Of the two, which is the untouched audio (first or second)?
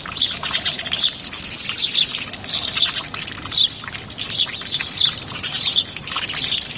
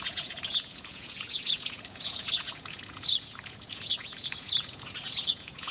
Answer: first